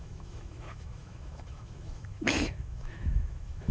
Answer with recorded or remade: remade